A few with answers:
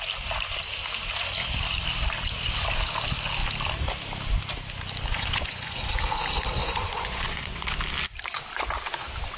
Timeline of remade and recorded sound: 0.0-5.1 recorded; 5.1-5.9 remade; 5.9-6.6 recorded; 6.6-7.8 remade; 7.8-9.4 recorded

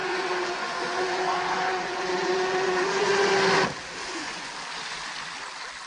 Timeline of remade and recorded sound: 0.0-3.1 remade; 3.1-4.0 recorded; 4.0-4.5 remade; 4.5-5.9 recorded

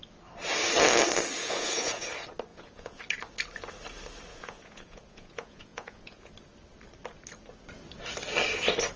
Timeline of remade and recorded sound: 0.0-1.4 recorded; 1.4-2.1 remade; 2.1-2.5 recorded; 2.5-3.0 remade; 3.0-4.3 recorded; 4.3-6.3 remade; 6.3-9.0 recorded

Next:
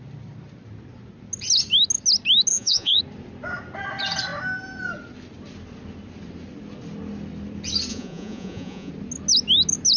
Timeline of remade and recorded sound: 0.0-2.5 recorded; 2.5-3.0 remade; 3.0-7.9 recorded; 7.9-8.9 remade; 8.9-10.0 recorded

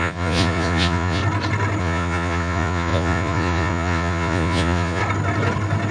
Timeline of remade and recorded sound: 0.0-1.2 remade; 1.2-1.8 recorded; 1.8-5.0 remade; 5.0-5.9 recorded

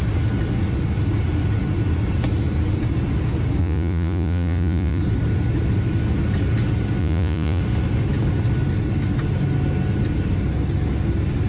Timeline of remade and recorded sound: 0.0-3.6 recorded; 3.6-5.0 remade; 5.0-7.0 recorded; 7.0-7.6 remade; 7.6-11.5 recorded

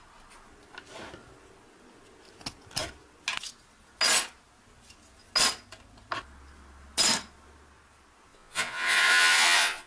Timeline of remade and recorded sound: 0.0-8.3 recorded; 8.3-9.9 remade

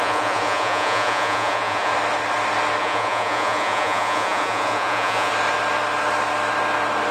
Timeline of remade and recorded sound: 0.0-1.9 remade; 1.9-2.8 recorded; 2.8-5.3 remade; 5.3-7.1 recorded